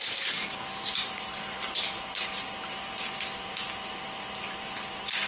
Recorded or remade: remade